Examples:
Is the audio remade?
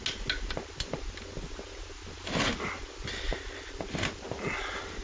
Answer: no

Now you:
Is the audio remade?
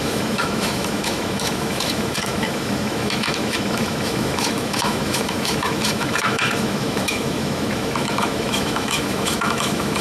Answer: yes